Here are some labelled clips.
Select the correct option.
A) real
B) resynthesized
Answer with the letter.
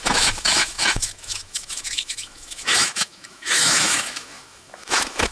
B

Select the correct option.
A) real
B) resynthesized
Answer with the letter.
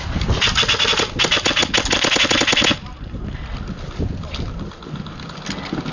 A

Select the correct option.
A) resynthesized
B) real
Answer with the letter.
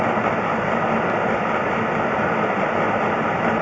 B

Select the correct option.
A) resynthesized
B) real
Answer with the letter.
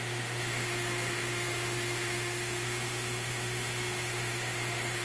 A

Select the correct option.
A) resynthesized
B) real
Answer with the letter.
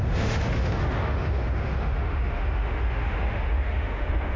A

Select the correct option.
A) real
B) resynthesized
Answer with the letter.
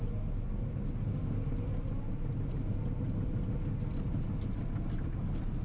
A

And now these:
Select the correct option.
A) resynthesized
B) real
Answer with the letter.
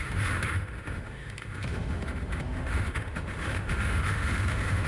A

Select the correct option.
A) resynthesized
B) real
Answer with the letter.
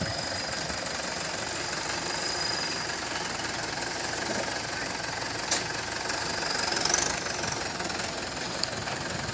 B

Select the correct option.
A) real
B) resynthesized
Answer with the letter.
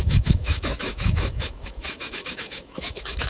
B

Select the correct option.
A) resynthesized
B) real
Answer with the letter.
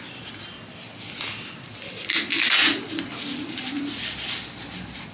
B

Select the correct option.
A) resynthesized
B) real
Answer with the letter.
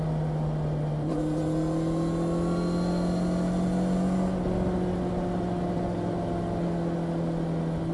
B